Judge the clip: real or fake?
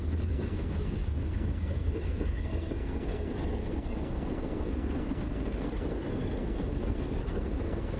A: fake